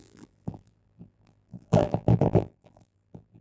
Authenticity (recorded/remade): remade